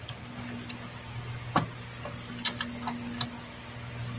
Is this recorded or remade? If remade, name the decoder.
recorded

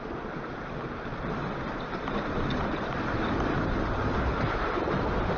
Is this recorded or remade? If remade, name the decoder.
remade, vocoder, BigVGAN v2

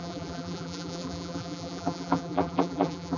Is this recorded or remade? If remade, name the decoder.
remade, vocoder, BigVGAN v2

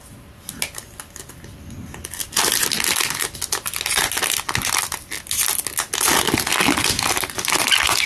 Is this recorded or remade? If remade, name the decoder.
recorded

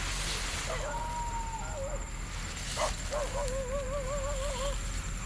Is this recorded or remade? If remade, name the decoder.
recorded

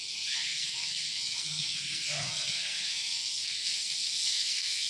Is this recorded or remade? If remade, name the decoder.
remade, codec, SNAC